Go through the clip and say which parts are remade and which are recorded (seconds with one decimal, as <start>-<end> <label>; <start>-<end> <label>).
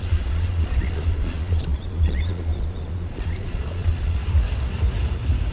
0.0-4.2 remade; 4.2-5.5 recorded